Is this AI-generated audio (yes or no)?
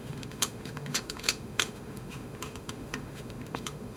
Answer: yes